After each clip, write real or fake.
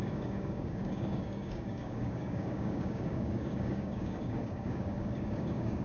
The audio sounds fake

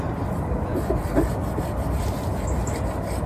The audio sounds real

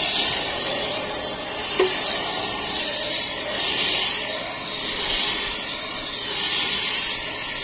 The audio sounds real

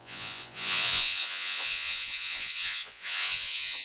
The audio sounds fake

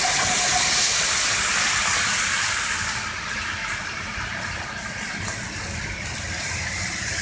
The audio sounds real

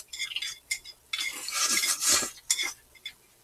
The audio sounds real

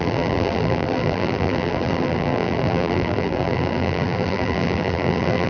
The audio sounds fake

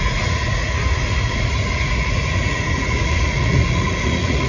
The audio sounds fake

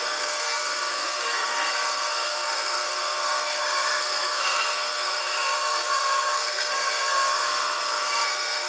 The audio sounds fake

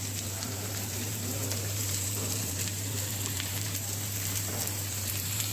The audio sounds fake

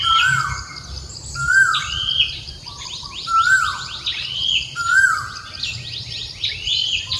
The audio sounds real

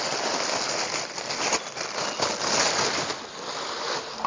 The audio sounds real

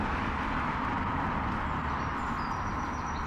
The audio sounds real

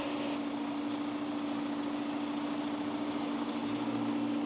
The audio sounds real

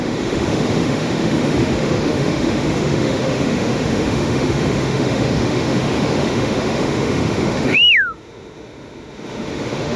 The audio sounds fake